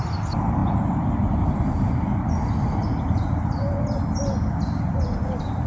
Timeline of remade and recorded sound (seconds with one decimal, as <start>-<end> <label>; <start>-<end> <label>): 0.0-0.6 remade; 0.6-1.4 recorded; 1.4-2.1 remade; 2.1-4.8 recorded; 4.8-5.7 remade